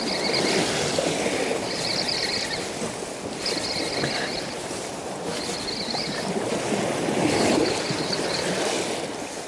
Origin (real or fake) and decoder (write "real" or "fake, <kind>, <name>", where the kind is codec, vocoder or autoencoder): real